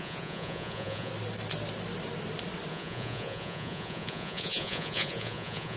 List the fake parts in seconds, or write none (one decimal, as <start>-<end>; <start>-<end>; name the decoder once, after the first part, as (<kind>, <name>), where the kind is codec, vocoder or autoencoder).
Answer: 0.0-1.1 (vocoder, Vocos); 2.7-5.8